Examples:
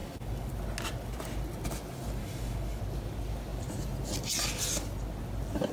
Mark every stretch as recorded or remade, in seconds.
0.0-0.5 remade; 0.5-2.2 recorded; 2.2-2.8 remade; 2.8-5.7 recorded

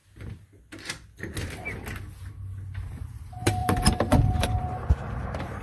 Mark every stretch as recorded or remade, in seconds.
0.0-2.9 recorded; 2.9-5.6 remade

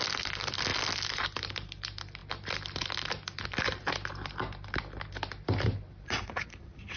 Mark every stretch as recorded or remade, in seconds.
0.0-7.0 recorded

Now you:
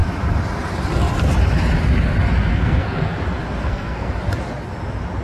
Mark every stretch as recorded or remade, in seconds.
0.0-2.5 recorded; 2.5-3.2 remade; 3.2-3.6 recorded; 3.6-4.1 remade; 4.1-5.2 recorded